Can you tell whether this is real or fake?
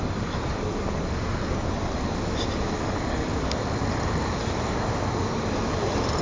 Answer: real